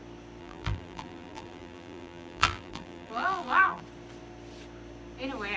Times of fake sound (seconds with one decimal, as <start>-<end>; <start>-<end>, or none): 0.4-3.8